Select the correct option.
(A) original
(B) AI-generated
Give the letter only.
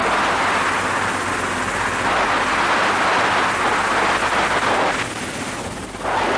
A